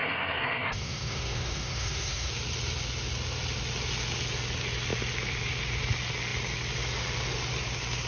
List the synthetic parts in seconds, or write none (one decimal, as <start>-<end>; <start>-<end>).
0.0-2.3